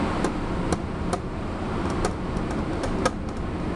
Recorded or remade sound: recorded